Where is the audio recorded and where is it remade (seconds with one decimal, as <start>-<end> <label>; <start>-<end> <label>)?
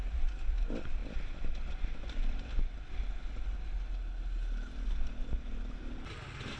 0.0-6.6 recorded